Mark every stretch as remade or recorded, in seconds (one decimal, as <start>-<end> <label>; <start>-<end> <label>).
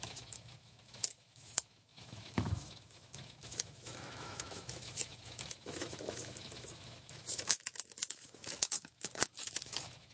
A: 0.0-10.1 remade